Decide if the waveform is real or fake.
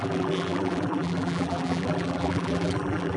fake